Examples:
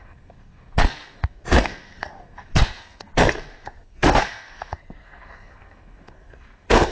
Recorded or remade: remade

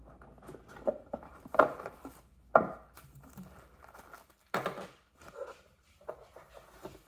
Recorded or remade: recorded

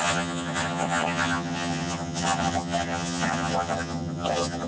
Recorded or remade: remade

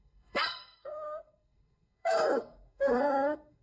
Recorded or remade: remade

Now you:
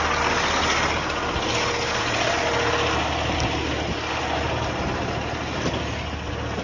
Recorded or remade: recorded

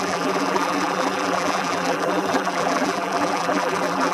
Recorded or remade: remade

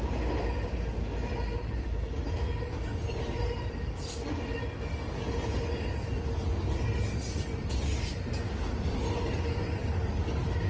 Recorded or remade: recorded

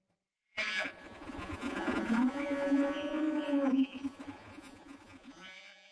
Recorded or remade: remade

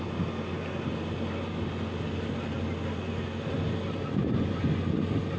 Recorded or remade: recorded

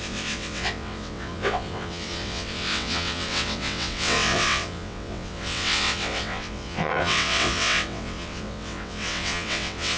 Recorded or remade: remade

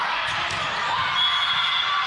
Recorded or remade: recorded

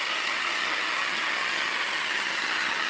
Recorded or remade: remade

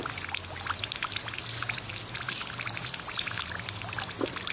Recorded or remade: recorded